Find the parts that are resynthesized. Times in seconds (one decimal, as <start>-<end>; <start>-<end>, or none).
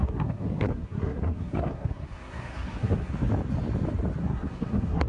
0.0-3.1; 4.2-5.1